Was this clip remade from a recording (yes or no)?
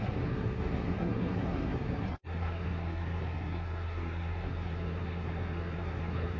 yes